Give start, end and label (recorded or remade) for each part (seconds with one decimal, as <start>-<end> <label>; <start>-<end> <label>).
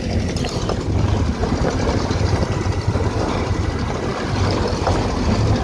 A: 0.0-1.4 recorded; 1.4-3.5 remade; 3.5-5.6 recorded